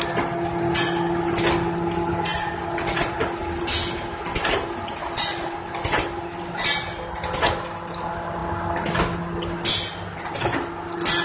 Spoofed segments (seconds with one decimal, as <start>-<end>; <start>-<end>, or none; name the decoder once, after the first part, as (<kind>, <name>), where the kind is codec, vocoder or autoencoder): none